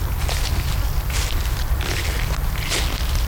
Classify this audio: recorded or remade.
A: recorded